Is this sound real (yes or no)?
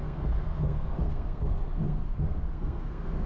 no